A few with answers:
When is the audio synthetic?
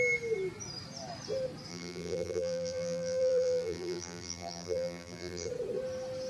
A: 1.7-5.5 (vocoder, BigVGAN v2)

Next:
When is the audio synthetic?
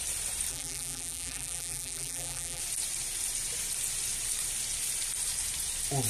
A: 0.5-2.6 (vocoder, BigVGAN v2)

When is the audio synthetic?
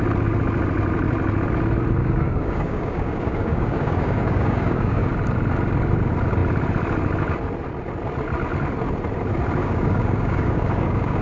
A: 2.0-5.1 (codec, DAC); 9.6-11.2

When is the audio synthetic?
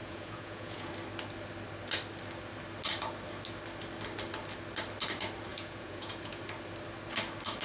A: 0.0-0.9 (vocoder, Vocos); 5.5-6.4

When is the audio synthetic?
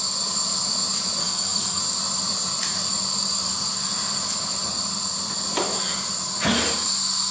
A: 1.2-1.8 (codec, SNAC)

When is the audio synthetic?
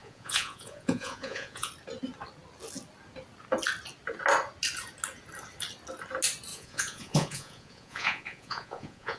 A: 0.0-1.7 (vocoder, Vocos); 6.5-9.2